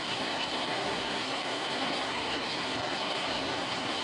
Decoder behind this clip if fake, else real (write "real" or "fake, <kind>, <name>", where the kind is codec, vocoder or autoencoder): fake, codec, SNAC